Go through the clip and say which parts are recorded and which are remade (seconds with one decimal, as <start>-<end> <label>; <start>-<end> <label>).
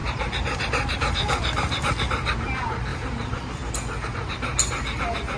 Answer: 0.0-1.9 remade; 1.9-2.9 recorded; 2.9-3.7 remade; 3.7-5.4 recorded